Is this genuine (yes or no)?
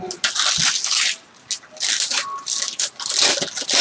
yes